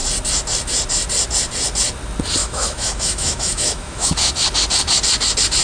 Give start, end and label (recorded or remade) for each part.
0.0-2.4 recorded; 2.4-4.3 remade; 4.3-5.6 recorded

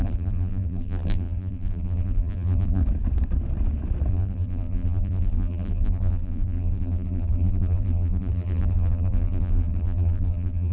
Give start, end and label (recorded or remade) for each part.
0.0-2.8 remade; 2.8-4.1 recorded; 4.1-10.7 remade

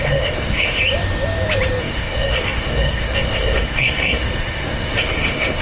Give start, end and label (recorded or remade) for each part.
0.0-0.8 remade; 0.8-1.8 recorded; 1.8-5.6 remade

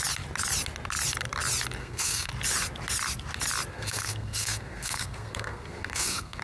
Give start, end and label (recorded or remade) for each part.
0.0-1.8 recorded; 1.8-2.3 remade; 2.3-3.7 recorded; 3.7-6.4 remade